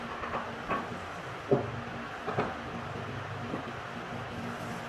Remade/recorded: recorded